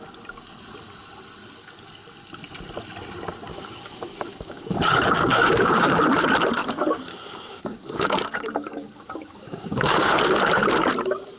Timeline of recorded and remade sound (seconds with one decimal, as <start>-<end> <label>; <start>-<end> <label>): 0.0-3.5 recorded; 3.5-6.0 remade; 6.0-6.6 recorded; 6.6-10.2 remade; 10.2-11.4 recorded